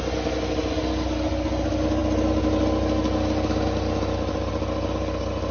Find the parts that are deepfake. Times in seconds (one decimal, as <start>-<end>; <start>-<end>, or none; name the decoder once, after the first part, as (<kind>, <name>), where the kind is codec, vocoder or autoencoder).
none